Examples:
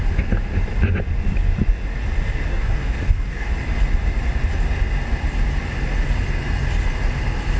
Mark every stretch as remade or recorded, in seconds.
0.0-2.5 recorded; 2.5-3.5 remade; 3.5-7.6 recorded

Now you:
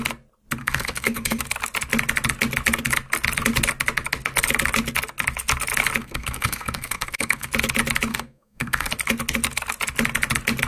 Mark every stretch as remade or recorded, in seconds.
0.0-0.6 recorded; 0.6-1.4 remade; 1.4-6.0 recorded; 6.0-7.5 remade; 7.5-8.1 recorded; 8.1-8.9 remade; 8.9-10.7 recorded

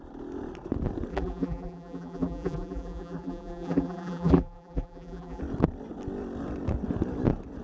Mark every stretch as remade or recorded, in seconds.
0.0-1.1 recorded; 1.1-5.4 remade; 5.4-7.6 recorded

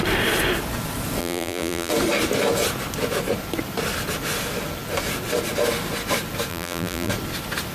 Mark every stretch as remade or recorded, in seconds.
0.0-1.2 recorded; 1.2-1.9 remade; 1.9-6.5 recorded; 6.5-7.1 remade; 7.1-7.7 recorded